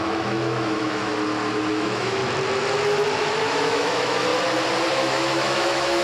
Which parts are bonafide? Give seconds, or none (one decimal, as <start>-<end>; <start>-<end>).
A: 1.1-1.7; 2.2-3.2; 4.3-4.9